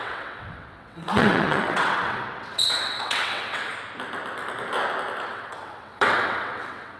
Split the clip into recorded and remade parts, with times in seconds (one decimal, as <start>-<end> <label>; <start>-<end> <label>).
0.0-3.7 remade; 3.7-5.3 recorded; 5.3-7.0 remade

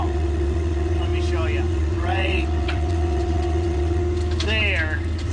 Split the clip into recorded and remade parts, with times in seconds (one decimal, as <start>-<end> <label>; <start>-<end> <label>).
0.0-1.1 remade; 1.1-1.7 recorded; 1.7-4.0 remade; 4.0-5.3 recorded